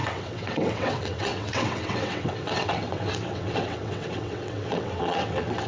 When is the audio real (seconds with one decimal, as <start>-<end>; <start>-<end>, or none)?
none